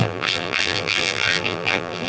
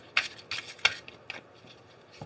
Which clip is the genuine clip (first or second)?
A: second